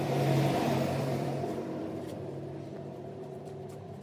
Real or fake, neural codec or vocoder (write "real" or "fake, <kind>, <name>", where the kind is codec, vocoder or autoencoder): fake, vocoder, BigVGAN v2